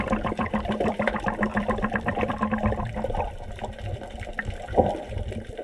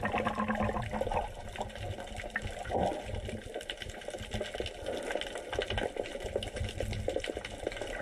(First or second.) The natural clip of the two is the second